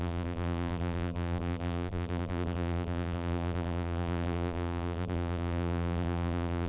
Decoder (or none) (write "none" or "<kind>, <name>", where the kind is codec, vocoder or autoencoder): vocoder, BigVGAN v2